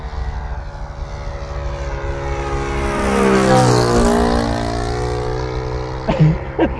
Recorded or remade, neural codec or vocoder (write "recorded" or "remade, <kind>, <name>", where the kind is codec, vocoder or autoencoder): recorded